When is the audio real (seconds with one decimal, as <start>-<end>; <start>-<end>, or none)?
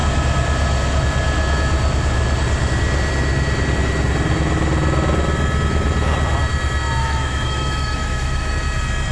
0.0-7.0; 8.5-9.1